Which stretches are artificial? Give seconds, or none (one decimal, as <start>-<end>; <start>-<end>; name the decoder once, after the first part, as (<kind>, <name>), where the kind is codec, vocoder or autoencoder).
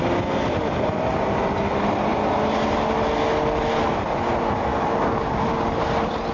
4.7-5.4 (codec, DAC)